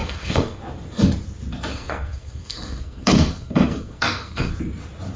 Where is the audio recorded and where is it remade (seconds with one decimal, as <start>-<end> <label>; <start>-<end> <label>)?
0.0-0.6 remade; 0.6-1.7 recorded; 1.7-4.5 remade; 4.5-5.2 recorded